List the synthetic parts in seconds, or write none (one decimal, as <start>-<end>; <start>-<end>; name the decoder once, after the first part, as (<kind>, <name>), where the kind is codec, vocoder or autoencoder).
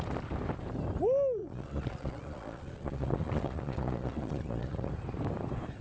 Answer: 1.4-4.9 (vocoder, Vocos)